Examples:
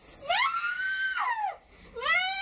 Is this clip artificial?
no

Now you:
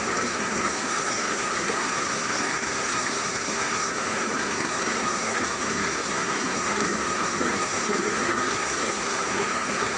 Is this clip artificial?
yes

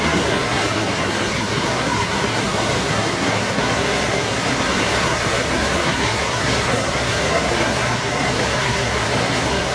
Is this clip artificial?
yes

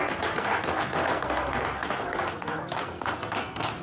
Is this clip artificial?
yes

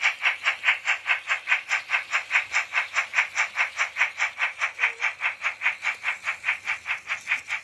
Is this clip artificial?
no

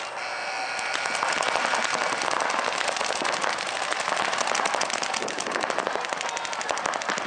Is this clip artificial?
no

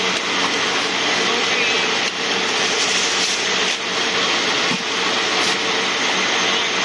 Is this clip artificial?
no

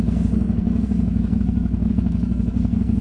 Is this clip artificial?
yes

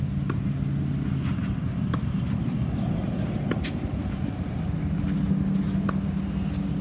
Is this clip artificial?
no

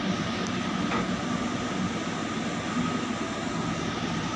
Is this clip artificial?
no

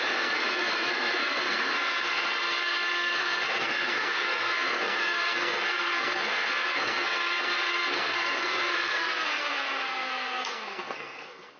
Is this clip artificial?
yes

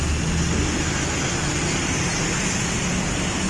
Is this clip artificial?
no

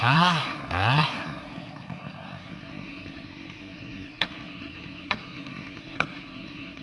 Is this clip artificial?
yes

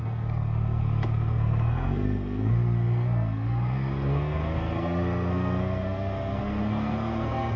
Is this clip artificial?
yes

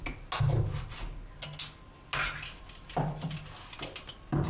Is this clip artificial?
no